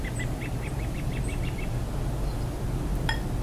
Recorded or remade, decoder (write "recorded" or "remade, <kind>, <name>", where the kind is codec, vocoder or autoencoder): recorded